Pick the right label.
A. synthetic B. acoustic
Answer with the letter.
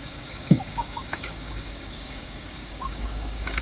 A